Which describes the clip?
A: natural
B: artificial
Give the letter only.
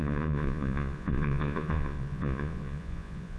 B